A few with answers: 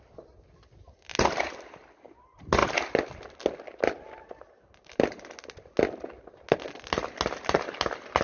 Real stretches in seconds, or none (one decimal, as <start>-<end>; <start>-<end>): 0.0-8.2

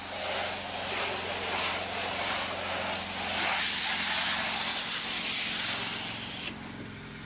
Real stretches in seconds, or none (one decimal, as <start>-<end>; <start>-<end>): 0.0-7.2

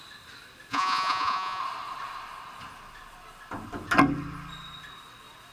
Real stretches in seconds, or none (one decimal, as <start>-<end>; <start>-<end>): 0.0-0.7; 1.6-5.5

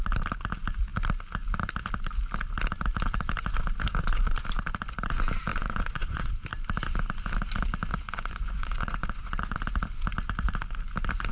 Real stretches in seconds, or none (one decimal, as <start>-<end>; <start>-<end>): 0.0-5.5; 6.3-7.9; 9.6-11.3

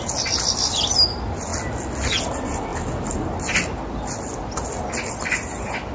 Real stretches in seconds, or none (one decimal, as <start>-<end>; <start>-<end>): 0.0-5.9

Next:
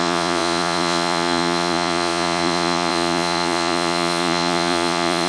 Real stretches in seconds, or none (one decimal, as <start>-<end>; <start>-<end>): none

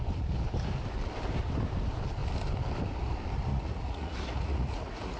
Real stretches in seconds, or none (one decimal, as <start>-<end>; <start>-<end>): 0.0-3.5